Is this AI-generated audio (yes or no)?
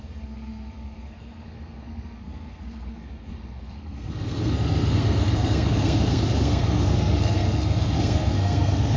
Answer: yes